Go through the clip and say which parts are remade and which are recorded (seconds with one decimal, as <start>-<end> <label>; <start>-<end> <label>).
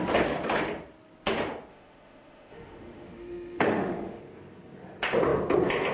0.0-1.7 recorded; 1.7-4.2 remade; 4.2-5.9 recorded